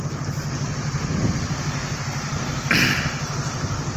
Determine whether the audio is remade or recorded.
recorded